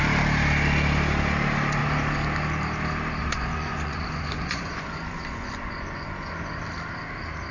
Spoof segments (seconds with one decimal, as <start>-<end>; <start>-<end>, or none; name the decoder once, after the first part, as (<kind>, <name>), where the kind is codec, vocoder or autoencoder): 3.2-6.3 (vocoder, Vocos)